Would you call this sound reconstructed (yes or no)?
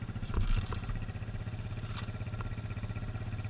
no